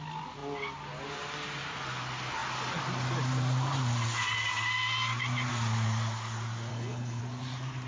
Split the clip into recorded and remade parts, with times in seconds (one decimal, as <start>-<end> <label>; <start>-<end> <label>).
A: 0.0-6.7 recorded; 6.7-7.2 remade; 7.2-7.9 recorded